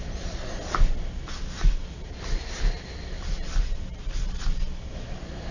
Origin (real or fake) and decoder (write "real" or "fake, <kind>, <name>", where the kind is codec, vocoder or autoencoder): real